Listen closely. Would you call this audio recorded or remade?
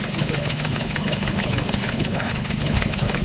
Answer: remade